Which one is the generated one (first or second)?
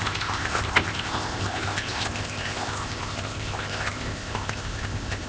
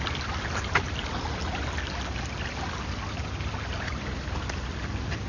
first